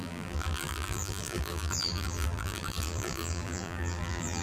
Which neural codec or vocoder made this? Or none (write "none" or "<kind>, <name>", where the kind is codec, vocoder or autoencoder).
vocoder, BigVGAN v2